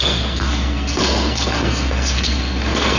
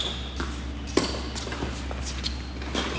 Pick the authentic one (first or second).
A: second